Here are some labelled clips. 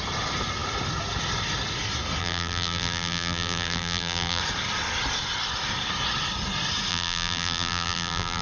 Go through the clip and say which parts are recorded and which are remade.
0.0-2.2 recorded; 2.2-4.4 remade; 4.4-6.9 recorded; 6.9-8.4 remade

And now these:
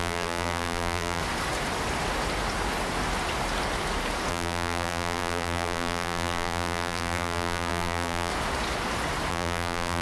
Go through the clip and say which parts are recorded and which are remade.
0.0-1.2 remade; 1.2-4.3 recorded; 4.3-8.3 remade; 8.3-9.3 recorded; 9.3-10.0 remade